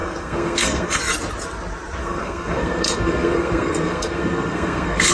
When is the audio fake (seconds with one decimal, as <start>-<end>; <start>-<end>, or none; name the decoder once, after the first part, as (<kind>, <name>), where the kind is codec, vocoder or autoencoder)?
0.0-1.0 (codec, SNAC); 2.0-5.1